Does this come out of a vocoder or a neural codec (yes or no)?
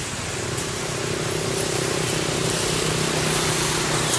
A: no